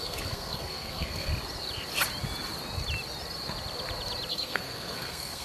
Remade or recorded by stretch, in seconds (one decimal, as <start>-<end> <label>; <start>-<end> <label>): 0.0-1.3 remade; 1.3-4.3 recorded; 4.3-5.4 remade